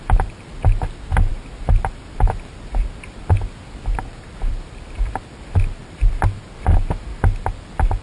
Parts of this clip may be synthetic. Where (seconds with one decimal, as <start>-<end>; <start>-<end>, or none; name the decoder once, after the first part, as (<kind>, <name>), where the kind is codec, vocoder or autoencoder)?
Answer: none